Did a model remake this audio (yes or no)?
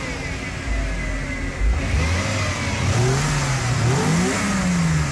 no